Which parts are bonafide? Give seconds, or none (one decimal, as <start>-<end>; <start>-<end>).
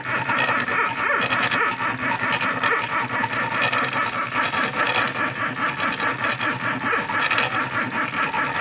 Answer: 0.0-8.6